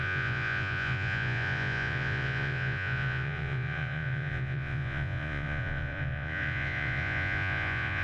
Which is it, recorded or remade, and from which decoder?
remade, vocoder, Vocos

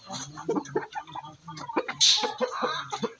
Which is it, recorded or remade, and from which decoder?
recorded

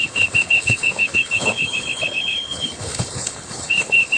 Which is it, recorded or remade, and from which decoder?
remade, codec, HILCodec